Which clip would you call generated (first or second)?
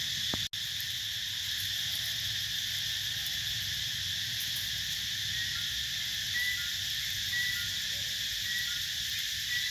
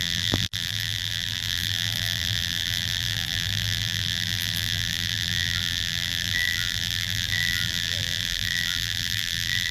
second